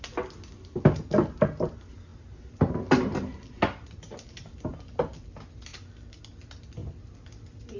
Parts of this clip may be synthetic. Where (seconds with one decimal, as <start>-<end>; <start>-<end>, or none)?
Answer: none